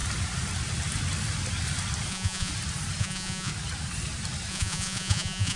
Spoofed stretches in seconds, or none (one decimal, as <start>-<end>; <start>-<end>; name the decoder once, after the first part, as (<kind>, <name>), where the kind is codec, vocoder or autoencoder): 2.1-2.5 (vocoder, Vocos); 3.0-3.5; 4.5-5.6